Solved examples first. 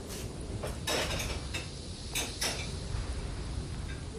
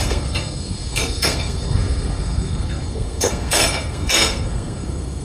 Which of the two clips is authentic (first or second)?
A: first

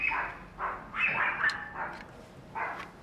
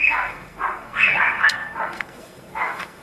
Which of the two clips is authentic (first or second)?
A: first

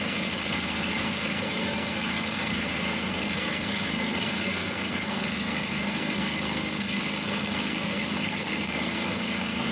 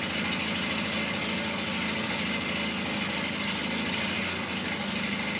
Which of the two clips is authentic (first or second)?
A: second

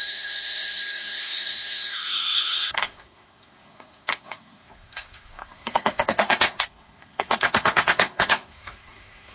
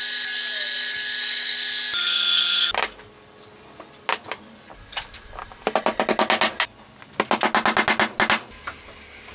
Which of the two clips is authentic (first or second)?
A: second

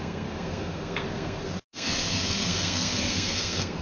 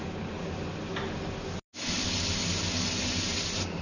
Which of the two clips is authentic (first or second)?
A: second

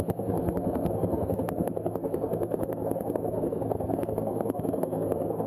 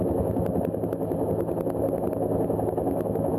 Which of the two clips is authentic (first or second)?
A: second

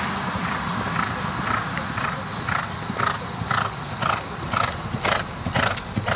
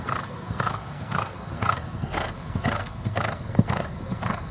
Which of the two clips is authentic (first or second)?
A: first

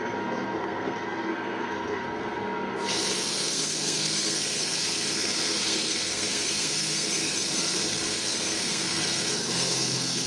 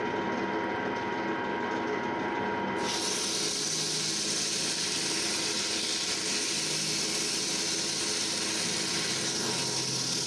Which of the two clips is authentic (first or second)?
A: second